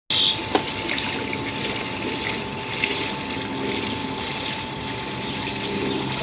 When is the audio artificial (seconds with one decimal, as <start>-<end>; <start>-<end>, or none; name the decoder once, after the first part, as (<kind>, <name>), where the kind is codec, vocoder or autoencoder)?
4.0-6.2 (vocoder, BigVGAN v2)